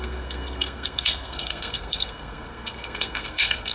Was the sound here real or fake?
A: fake